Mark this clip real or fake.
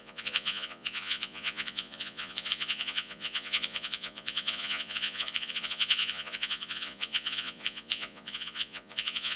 fake